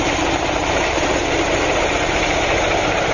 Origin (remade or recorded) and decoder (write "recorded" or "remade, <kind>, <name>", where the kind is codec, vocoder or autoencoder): remade, vocoder, BigVGAN v2